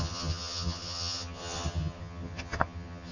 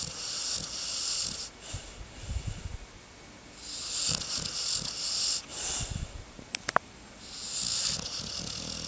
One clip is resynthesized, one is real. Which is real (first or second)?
second